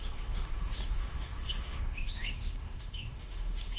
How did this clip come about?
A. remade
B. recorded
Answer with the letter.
A